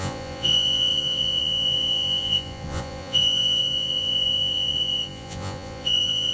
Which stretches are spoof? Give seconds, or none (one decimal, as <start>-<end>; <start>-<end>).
0.0-6.3